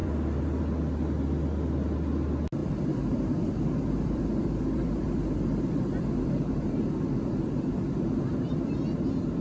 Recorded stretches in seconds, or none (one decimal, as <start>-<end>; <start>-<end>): 0.6-2.6; 7.5-9.4